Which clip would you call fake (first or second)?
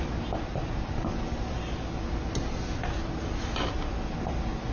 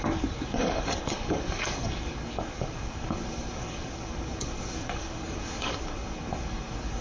second